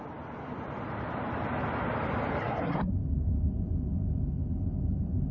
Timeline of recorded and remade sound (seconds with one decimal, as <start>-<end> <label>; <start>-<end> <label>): 0.0-2.4 recorded; 2.4-2.9 remade; 2.9-5.3 recorded